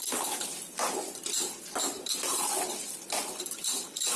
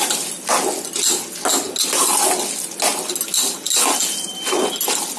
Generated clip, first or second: first